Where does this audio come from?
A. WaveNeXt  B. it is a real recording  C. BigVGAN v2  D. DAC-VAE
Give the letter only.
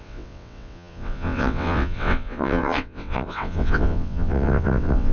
A